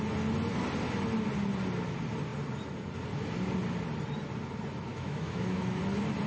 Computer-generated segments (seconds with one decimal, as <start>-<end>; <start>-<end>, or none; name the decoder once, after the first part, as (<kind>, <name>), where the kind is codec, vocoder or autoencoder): 4.9-5.8 (autoencoder, DAC-VAE)